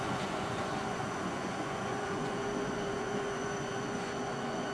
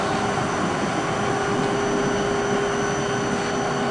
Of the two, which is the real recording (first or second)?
second